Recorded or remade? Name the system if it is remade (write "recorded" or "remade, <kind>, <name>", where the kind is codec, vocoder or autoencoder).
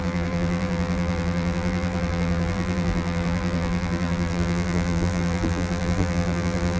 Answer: remade, vocoder, BigVGAN v2